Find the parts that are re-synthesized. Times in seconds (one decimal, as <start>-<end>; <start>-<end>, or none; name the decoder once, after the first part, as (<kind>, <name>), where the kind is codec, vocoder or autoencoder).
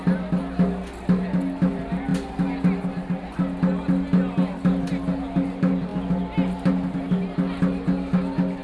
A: none